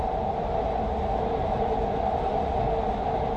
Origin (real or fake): real